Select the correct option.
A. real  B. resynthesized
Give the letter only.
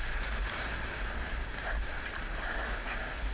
A